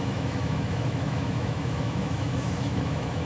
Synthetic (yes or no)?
yes